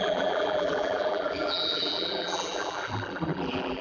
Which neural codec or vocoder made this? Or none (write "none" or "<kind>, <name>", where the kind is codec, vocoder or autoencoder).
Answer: vocoder, BigVGAN v2